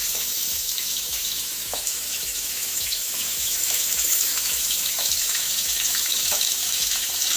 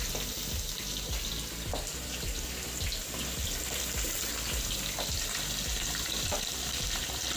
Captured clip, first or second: second